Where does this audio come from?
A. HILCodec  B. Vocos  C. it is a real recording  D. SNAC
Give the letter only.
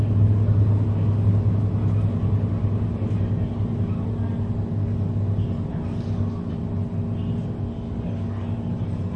C